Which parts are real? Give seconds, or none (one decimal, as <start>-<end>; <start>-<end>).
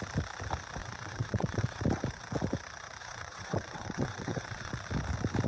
0.0-0.8; 1.8-3.0; 4.7-5.5